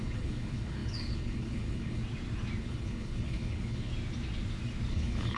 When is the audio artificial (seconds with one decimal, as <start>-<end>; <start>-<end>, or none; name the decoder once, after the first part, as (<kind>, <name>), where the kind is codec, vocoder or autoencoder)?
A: 0.0-2.0 (codec, HILCodec); 2.6-3.9; 4.9-5.4